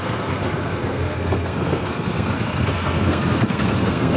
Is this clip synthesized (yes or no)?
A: yes